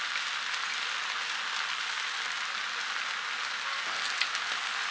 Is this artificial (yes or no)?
no